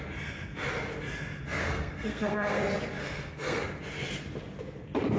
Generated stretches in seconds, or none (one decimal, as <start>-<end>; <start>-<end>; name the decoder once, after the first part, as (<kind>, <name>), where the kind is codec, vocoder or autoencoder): 1.6-2.6 (codec, SNAC); 3.0-3.6